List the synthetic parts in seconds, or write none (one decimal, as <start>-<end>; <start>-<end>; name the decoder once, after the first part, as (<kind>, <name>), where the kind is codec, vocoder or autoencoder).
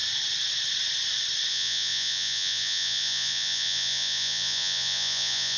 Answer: 1.5-5.6 (vocoder, Vocos)